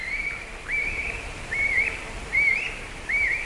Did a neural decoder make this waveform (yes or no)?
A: yes